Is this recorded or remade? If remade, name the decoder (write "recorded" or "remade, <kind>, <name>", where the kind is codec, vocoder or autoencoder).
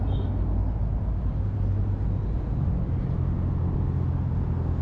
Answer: recorded